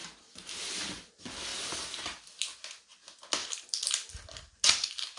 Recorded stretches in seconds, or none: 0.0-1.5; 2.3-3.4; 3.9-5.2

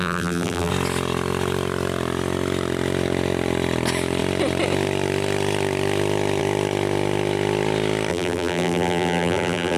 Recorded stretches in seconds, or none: 0.7-8.1

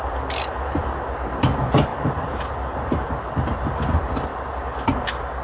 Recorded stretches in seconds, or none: 0.0-1.9; 2.5-5.4

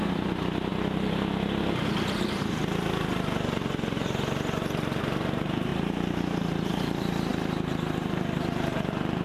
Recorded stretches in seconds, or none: 0.7-5.0

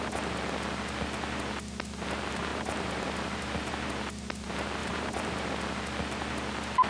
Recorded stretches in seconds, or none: 0.0-2.5; 3.7-4.8; 5.5-6.9

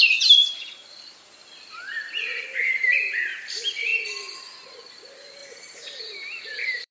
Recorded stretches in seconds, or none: 3.9-4.9

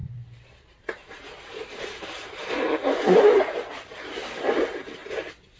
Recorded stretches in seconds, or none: 3.4-5.6